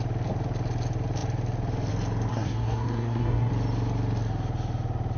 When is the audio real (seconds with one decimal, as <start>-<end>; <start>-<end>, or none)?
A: 0.0-2.3; 3.5-5.2